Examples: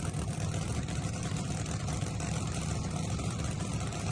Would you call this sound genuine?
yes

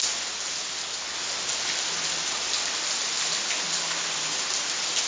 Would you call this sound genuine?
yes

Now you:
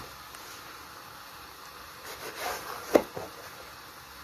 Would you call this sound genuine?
yes